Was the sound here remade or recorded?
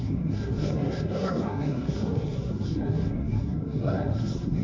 remade